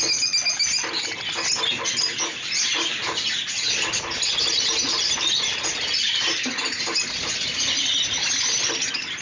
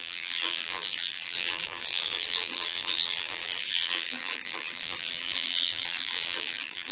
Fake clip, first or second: second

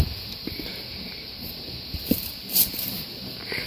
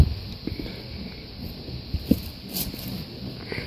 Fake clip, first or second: first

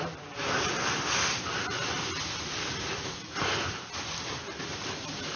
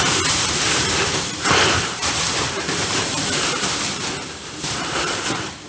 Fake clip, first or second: second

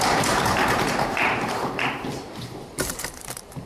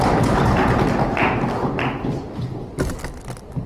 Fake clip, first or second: first